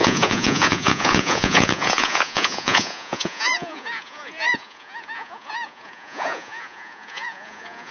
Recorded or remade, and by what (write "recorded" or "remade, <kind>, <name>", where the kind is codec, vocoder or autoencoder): remade, vocoder, Vocos